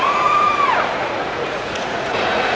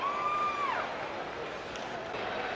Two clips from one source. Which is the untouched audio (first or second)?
second